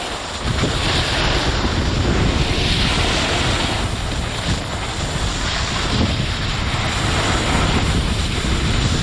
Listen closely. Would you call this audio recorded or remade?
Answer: recorded